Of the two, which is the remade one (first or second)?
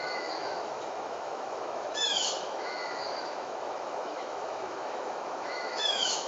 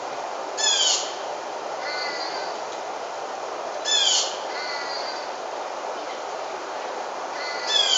first